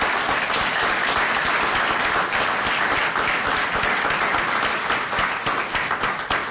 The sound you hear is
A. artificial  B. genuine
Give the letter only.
B